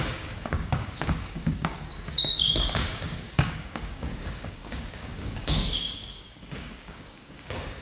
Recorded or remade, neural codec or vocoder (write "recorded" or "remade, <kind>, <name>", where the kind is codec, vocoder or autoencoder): remade, codec, DAC